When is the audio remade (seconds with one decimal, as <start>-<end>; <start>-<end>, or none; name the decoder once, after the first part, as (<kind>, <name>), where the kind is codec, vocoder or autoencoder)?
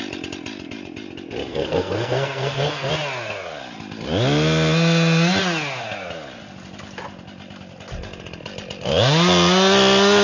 1.5-2.9 (codec, SNAC)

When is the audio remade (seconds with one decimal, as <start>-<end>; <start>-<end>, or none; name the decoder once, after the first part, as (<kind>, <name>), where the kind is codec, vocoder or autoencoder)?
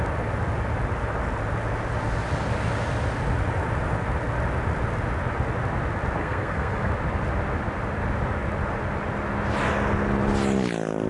6.2-6.9 (codec, SNAC)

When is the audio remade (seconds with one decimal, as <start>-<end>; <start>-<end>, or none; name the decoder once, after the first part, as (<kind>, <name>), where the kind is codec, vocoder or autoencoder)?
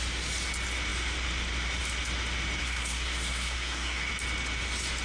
2.6-4.1 (codec, SNAC)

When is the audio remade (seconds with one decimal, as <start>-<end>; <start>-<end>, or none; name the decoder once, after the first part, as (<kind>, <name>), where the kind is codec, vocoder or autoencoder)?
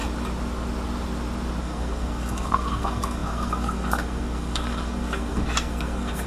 1.6-6.3 (codec, SNAC)